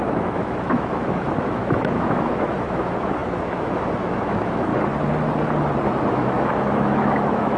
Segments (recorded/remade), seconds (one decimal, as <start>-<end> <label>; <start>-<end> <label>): 0.0-4.7 remade; 4.7-6.1 recorded; 6.1-7.6 remade